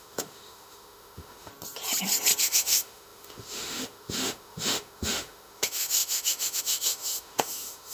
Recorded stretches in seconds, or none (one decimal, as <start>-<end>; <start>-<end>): 1.5-2.4